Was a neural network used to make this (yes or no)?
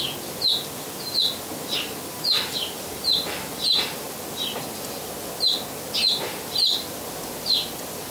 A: no